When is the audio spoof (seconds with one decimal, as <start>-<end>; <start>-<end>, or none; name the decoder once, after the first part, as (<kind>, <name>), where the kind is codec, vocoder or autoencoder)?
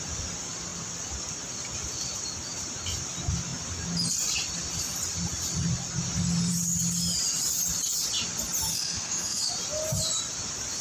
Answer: 8.7-9.5 (codec, SNAC)